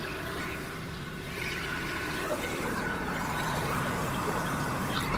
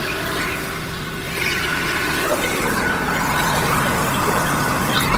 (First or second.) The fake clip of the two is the first